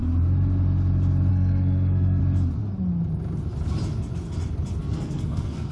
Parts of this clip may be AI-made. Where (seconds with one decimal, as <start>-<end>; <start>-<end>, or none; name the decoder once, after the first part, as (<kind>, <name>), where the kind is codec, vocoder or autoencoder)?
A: 1.3-2.2 (codec, SNAC); 4.8-5.7